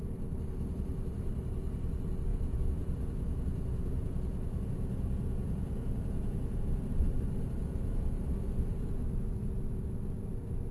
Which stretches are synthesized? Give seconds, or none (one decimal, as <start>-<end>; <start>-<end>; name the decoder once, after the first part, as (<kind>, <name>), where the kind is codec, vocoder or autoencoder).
2.3-6.6 (vocoder, Vocos)